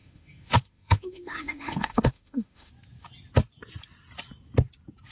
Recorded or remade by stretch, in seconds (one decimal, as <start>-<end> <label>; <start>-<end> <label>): 0.0-2.7 remade; 2.7-5.1 recorded